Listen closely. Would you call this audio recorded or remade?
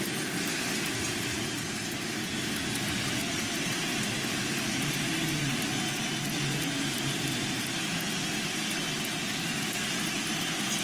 recorded